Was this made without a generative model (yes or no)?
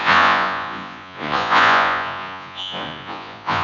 no